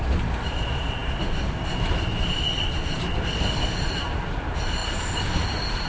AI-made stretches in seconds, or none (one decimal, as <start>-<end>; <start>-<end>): none